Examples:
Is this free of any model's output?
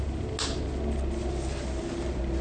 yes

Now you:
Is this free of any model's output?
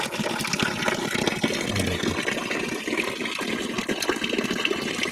yes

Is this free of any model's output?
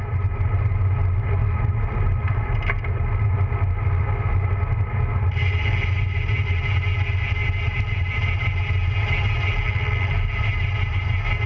yes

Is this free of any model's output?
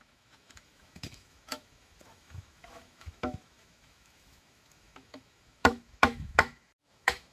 no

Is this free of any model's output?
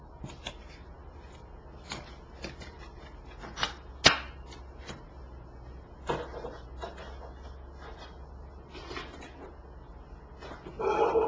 yes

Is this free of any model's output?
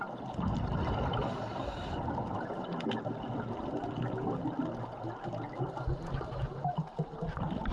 yes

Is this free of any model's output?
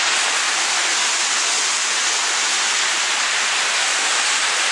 yes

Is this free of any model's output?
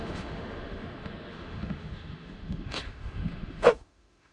no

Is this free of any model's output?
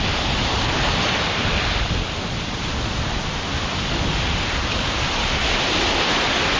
yes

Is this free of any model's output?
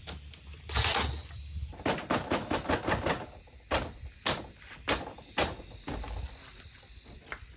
yes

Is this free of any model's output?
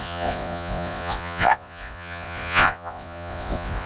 no